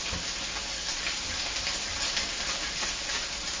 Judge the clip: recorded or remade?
recorded